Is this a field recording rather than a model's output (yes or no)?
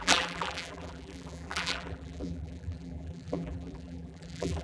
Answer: no